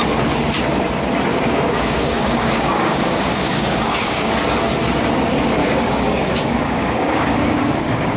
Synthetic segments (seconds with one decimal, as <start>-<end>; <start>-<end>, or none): 1.3-4.3; 5.6-8.2